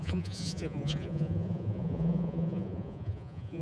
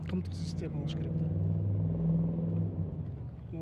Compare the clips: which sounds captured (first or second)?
second